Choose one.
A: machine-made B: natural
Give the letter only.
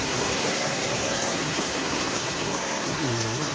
A